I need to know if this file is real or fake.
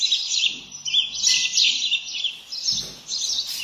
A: real